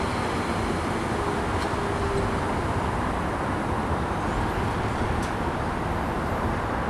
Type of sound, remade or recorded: recorded